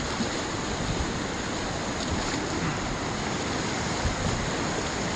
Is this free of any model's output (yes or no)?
yes